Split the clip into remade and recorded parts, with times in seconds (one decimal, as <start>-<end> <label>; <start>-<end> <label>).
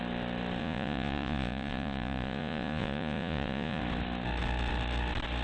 0.0-0.6 recorded; 0.6-3.8 remade; 3.8-5.4 recorded